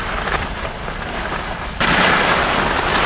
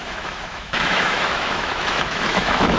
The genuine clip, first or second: first